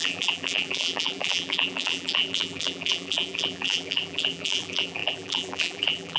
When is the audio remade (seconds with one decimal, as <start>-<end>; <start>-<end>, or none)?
0.0-6.2